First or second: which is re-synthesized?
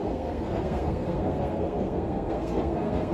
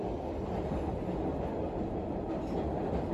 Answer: first